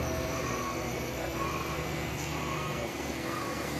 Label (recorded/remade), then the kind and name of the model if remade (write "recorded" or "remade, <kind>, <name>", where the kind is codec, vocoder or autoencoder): remade, codec, SNAC